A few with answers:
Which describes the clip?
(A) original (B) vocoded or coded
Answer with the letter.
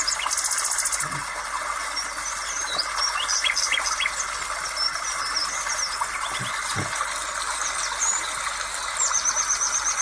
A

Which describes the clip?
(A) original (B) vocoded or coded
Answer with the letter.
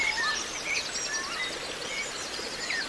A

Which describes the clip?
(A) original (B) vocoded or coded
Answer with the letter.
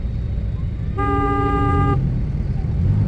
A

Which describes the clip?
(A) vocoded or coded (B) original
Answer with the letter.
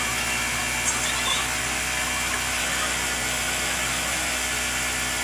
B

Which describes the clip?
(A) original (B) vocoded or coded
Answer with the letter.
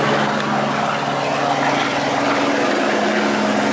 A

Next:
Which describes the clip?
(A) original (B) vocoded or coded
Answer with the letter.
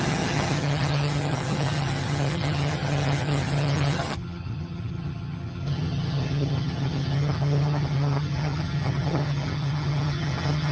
B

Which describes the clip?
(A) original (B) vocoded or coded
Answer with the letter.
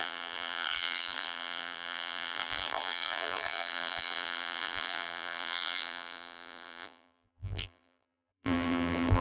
B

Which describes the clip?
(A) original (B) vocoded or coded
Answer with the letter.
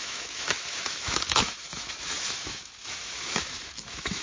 B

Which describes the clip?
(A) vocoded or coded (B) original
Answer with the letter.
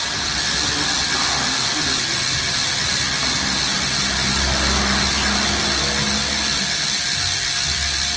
B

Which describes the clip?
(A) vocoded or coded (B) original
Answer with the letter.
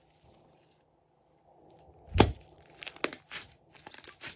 B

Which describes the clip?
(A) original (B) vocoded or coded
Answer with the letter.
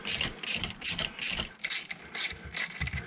B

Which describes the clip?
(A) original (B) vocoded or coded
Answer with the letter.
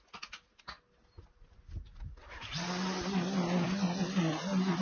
A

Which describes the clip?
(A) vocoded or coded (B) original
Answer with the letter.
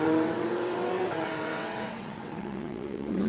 A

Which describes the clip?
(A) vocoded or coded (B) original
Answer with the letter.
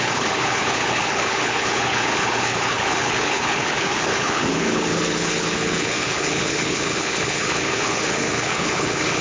A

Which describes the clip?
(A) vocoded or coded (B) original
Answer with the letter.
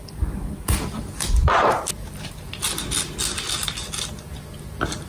B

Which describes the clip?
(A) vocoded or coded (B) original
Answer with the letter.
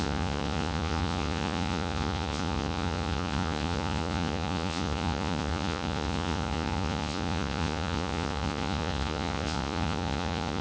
A